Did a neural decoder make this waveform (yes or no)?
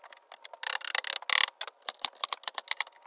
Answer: no